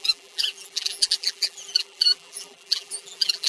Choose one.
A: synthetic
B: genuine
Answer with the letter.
A